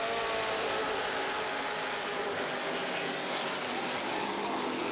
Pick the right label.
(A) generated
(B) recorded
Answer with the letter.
B